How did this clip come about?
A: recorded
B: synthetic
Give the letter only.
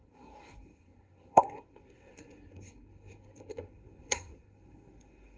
B